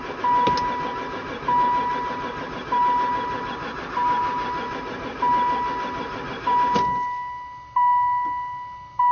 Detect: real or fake real